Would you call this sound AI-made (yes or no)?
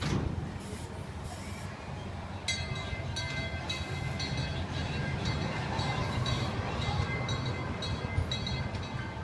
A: no